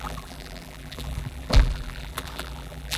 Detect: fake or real fake